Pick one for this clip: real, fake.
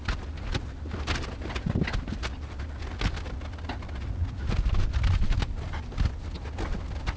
real